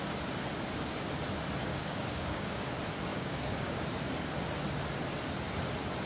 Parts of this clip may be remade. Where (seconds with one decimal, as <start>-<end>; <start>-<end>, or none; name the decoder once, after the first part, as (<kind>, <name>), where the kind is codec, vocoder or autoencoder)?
1.7-2.7 (codec, DAC); 3.1-3.8